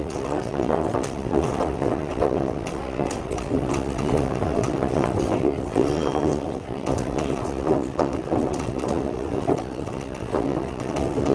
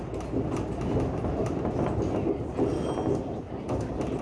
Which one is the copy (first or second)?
first